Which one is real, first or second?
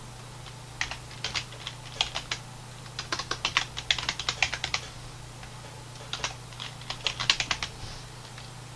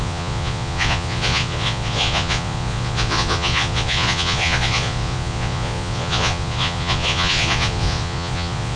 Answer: first